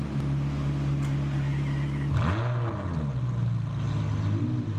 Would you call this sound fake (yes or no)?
no